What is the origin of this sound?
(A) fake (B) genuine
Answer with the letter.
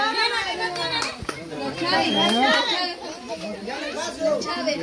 B